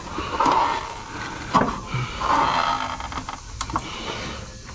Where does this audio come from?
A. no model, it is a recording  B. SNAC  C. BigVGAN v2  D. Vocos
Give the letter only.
C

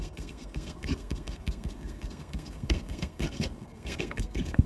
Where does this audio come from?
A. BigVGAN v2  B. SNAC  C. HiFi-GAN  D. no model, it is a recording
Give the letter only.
B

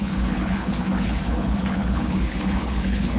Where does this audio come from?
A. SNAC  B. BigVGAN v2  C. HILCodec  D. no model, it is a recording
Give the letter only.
C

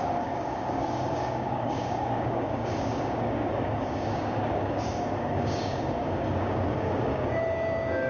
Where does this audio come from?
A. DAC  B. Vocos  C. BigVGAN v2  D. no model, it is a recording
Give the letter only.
A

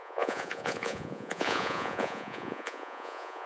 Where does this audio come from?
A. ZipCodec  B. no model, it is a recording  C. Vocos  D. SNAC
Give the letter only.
C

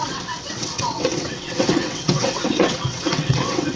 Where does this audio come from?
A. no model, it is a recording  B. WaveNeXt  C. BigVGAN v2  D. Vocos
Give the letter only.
B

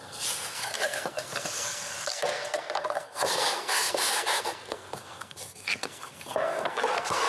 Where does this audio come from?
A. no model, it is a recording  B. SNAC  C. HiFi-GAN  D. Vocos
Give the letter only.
B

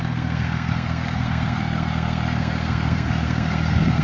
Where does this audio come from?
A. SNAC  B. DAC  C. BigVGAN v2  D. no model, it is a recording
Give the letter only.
A